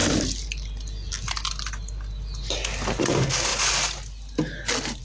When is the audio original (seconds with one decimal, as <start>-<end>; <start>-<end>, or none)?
0.0-5.0